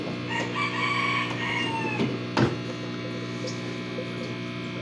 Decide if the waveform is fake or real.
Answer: real